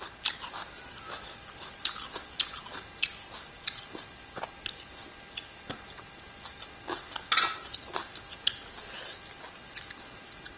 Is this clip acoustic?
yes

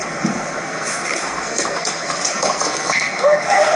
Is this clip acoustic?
no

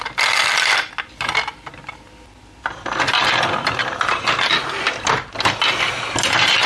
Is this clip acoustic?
yes